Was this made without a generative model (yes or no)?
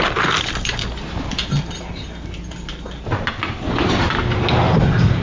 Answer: yes